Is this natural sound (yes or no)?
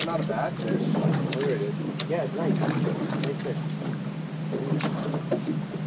yes